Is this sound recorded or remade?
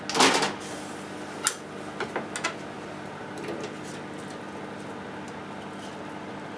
recorded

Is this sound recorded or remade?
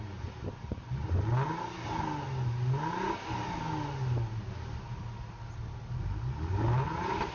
recorded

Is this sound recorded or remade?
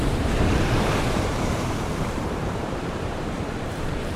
remade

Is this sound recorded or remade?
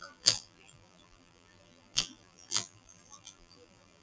remade